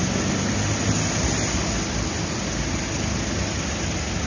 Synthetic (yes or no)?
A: no